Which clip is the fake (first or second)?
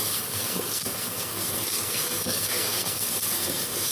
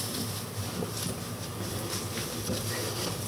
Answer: first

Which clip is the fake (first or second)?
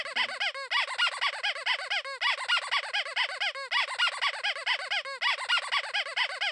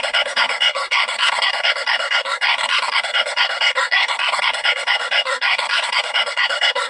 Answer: second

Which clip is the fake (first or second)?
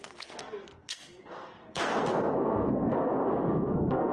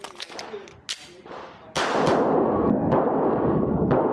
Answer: first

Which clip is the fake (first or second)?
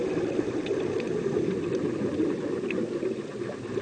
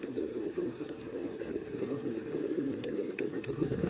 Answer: second